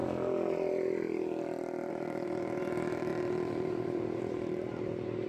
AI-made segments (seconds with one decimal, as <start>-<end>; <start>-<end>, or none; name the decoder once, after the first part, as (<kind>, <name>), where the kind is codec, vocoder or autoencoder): 1.9-5.3 (vocoder, BigVGAN v2)